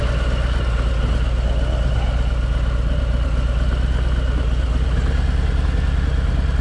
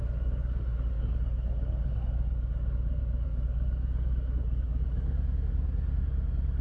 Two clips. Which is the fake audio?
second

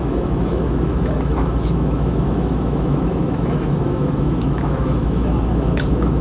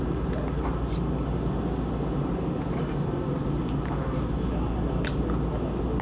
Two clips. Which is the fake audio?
first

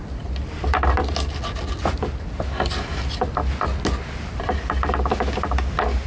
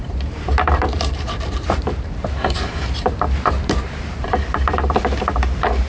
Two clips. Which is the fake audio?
second